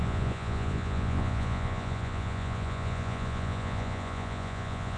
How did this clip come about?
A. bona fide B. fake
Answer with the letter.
B